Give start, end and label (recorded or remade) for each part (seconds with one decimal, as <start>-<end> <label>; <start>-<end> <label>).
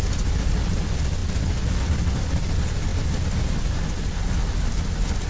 0.0-5.3 recorded